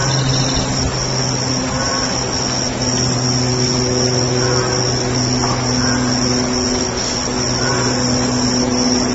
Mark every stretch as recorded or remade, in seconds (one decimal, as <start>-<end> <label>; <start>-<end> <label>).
0.0-9.1 recorded